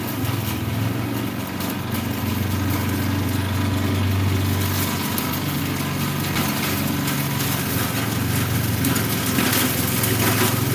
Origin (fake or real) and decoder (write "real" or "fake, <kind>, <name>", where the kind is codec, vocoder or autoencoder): real